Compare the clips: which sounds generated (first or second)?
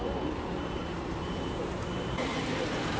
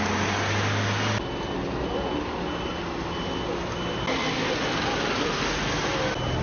first